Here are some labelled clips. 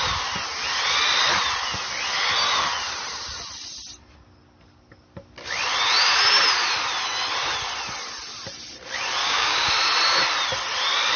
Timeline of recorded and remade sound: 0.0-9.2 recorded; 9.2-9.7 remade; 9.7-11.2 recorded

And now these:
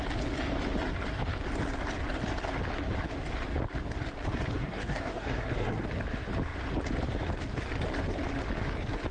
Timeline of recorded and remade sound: 0.0-4.6 recorded; 4.6-5.8 remade; 5.8-9.1 recorded

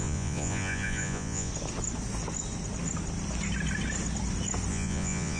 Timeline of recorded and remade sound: 0.0-1.5 remade; 1.5-4.7 recorded; 4.7-5.4 remade

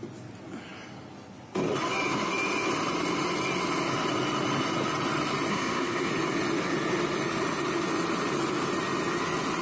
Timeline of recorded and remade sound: 0.0-5.5 recorded; 5.5-6.1 remade; 6.1-9.6 recorded

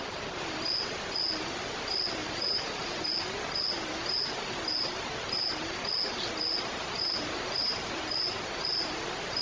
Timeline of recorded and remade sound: 0.0-2.2 recorded; 2.2-3.1 remade; 3.1-6.8 recorded; 6.8-8.0 remade; 8.0-9.4 recorded

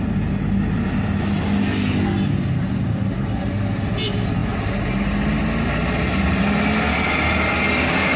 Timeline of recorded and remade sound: 0.0-8.2 recorded

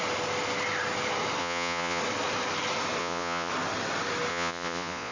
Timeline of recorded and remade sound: 0.0-1.4 recorded; 1.4-2.0 remade; 2.0-3.0 recorded; 3.0-3.5 remade; 3.5-4.3 recorded; 4.3-5.1 remade